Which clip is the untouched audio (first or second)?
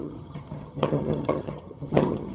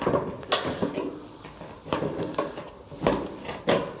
second